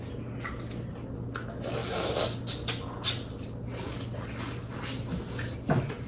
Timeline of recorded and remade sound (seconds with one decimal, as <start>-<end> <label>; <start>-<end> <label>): 0.0-6.1 recorded